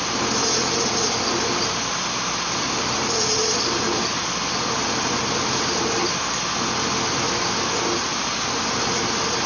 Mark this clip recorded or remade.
recorded